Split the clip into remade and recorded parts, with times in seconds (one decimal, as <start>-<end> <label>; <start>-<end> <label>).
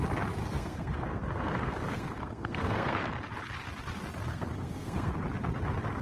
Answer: 0.0-0.4 recorded; 0.4-3.0 remade; 3.0-4.3 recorded; 4.3-5.1 remade; 5.1-6.0 recorded